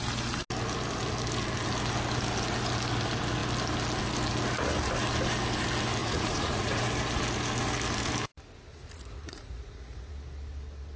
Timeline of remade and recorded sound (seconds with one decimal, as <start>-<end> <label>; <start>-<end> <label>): 0.0-6.0 recorded; 6.0-6.8 remade; 6.8-8.7 recorded; 8.7-10.1 remade; 10.1-11.0 recorded